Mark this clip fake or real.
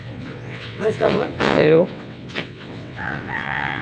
fake